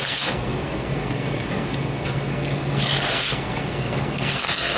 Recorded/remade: remade